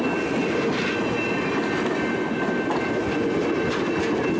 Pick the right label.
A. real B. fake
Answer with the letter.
A